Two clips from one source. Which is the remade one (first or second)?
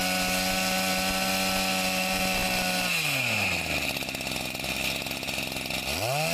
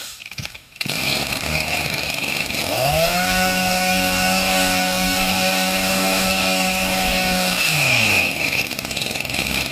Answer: second